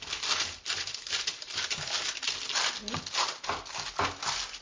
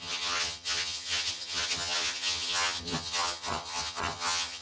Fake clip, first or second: second